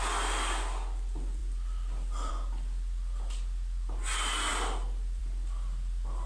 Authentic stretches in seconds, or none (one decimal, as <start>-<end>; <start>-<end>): 0.0-6.3